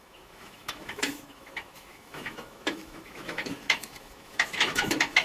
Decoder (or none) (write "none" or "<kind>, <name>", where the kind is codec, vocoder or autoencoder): autoencoder, DAC-VAE